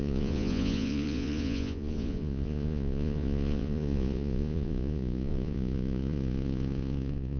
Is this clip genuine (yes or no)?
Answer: no